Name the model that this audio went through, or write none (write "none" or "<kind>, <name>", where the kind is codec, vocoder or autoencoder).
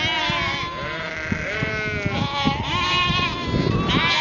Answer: none